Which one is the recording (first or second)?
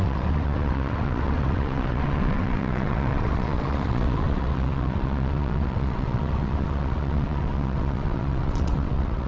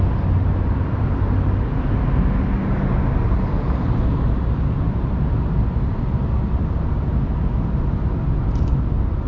second